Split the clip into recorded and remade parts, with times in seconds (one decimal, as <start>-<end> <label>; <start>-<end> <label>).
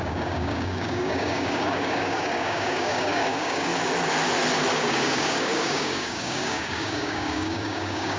0.0-3.7 remade; 3.7-4.7 recorded; 4.7-8.2 remade